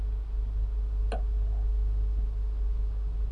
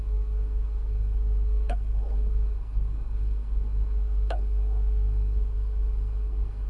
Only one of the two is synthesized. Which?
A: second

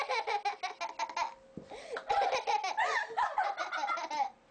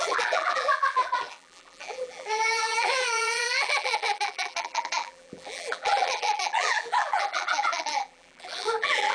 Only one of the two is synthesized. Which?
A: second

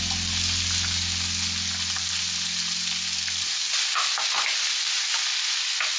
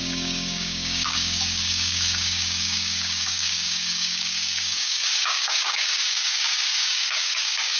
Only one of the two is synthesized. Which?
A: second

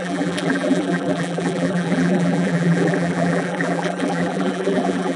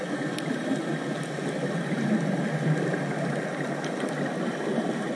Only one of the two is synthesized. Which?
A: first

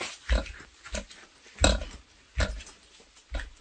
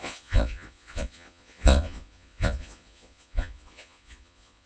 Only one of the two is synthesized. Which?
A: second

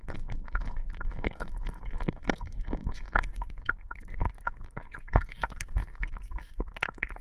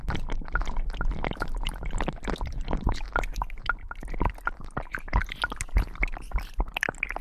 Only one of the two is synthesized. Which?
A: first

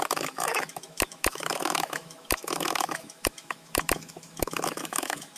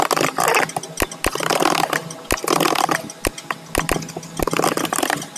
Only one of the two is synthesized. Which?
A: first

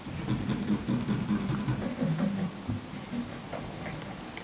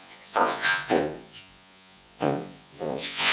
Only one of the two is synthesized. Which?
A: second